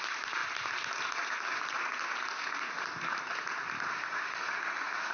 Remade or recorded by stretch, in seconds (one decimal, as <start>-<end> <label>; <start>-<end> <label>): 0.0-3.9 recorded; 3.9-5.1 remade